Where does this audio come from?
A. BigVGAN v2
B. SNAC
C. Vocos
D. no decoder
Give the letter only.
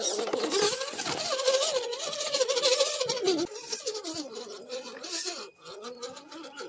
D